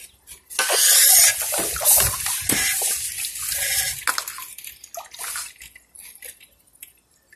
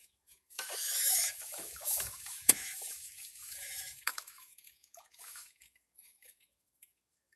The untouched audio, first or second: first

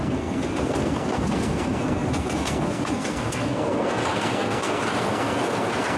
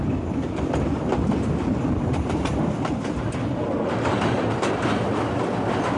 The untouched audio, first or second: second